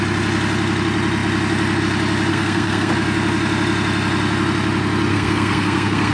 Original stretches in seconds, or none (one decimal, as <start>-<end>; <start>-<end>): 0.0-2.3; 2.9-5.1